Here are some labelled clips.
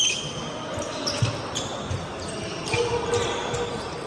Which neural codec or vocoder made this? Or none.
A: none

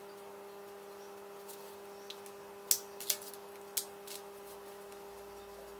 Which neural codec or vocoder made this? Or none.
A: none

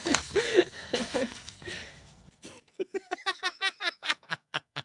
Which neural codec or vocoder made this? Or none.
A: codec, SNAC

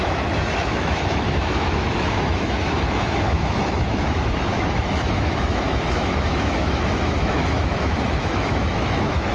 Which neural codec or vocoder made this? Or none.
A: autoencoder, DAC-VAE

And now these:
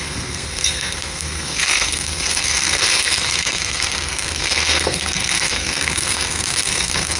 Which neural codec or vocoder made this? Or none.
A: codec, SNAC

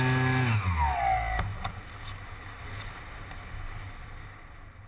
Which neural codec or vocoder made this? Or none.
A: none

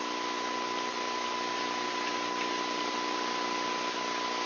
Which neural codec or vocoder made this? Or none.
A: none